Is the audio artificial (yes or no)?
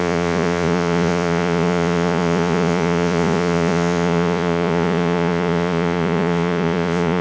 yes